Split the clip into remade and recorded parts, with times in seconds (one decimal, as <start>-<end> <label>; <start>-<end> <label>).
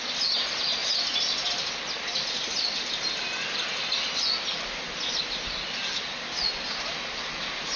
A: 0.0-7.8 recorded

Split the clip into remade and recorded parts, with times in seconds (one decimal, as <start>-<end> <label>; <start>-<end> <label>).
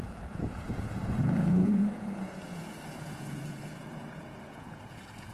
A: 0.0-5.3 remade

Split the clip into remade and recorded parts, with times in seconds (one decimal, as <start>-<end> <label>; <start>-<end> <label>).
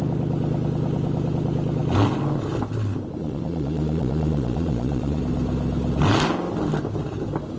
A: 0.0-3.2 recorded; 3.2-5.2 remade; 5.2-7.6 recorded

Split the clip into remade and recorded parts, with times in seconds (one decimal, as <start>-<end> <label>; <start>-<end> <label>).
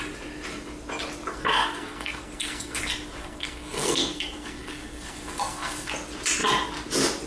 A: 0.0-1.3 recorded; 1.3-2.8 remade; 2.8-3.2 recorded; 3.2-5.9 remade; 5.9-7.3 recorded